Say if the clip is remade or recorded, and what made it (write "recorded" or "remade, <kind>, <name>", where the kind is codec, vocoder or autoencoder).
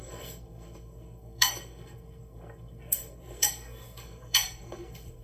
remade, codec, SNAC